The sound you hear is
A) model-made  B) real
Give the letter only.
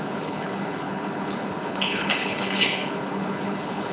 A